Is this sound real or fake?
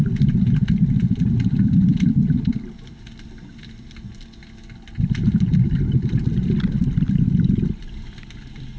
real